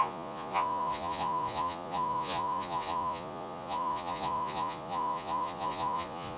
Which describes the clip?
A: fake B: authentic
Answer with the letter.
A